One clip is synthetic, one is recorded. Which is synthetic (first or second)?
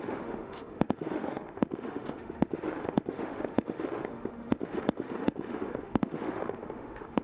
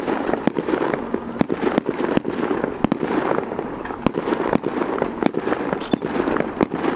first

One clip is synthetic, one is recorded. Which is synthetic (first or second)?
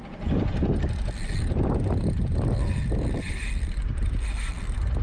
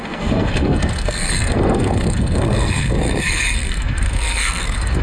second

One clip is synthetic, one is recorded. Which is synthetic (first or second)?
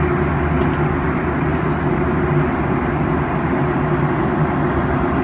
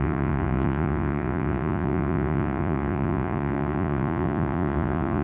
second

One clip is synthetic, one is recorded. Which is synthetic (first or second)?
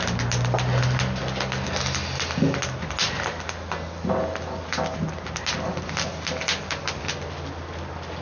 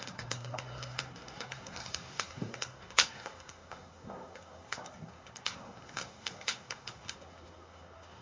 second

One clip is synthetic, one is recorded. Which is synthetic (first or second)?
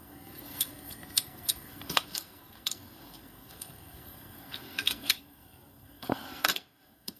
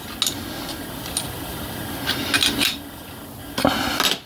first